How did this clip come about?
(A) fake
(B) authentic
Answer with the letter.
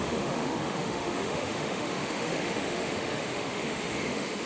A